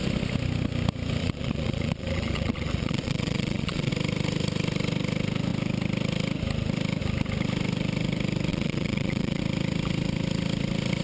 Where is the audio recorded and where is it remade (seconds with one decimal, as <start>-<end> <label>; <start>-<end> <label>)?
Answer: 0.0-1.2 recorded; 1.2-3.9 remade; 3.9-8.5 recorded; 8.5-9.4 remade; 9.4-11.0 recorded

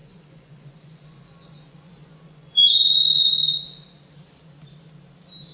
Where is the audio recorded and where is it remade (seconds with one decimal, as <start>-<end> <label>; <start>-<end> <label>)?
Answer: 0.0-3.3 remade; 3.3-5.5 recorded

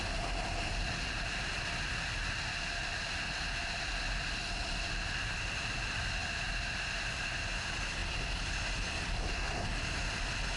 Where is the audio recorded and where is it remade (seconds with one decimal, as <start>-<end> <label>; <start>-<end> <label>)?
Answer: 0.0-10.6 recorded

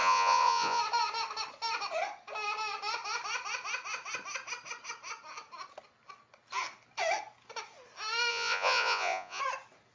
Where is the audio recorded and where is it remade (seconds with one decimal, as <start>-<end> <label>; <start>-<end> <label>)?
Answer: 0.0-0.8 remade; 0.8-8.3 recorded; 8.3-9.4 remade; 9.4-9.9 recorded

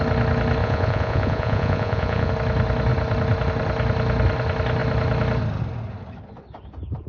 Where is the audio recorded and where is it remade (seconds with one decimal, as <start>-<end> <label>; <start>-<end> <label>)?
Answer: 0.0-0.6 recorded; 0.6-2.3 remade; 2.3-7.1 recorded